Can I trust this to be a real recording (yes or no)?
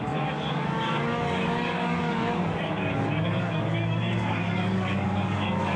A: no